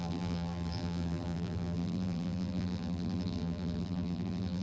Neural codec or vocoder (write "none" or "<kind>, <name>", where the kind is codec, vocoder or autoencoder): vocoder, BigVGAN v2